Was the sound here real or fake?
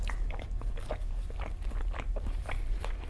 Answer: fake